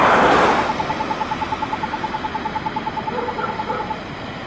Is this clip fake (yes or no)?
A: no